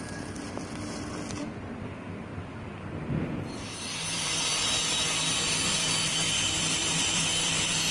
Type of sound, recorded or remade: remade